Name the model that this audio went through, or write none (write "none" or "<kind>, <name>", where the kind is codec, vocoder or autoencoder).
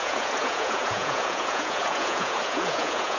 vocoder, Vocos